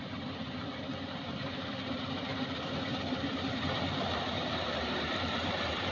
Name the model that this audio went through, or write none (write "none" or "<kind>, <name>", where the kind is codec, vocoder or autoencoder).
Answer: vocoder, BigVGAN v2